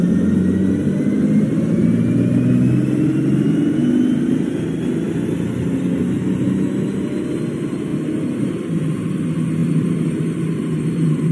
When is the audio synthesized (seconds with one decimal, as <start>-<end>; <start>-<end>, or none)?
7.9-9.1; 9.6-11.3